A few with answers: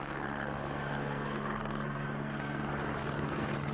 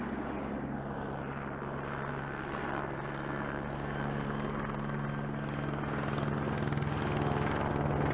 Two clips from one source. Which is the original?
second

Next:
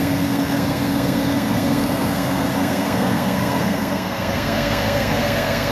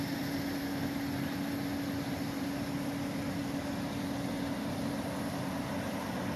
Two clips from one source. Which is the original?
second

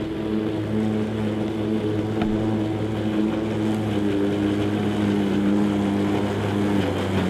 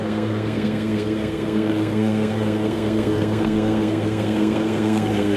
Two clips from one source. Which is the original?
first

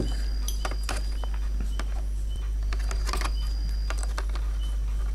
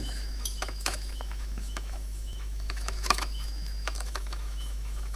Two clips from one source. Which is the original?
first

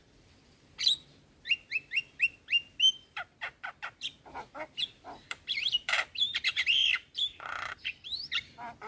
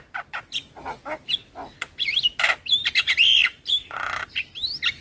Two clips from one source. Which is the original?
second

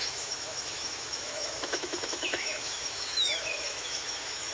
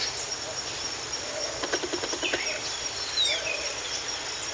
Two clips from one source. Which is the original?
second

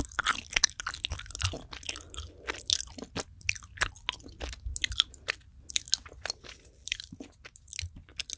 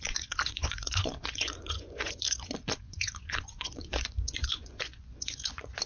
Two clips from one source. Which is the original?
first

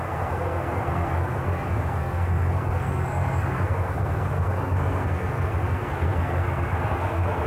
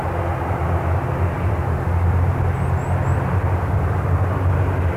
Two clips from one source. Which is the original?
second